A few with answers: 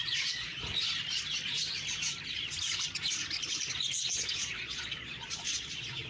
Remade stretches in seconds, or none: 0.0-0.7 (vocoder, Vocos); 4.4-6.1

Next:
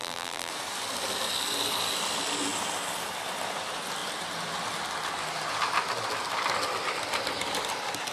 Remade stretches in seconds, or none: 0.0-0.5 (vocoder, BigVGAN v2)

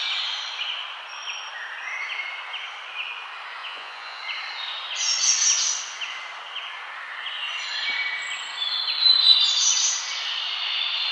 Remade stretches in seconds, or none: 3.6-4.2 (vocoder, Vocos)